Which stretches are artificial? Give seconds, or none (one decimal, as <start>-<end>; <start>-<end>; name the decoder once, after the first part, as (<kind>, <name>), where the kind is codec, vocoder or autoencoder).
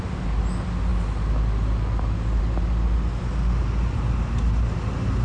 none